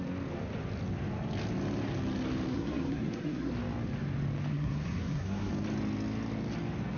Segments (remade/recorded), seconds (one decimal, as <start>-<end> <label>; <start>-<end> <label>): 0.0-2.5 recorded; 2.5-3.5 remade; 3.5-4.5 recorded; 4.5-5.5 remade; 5.5-7.0 recorded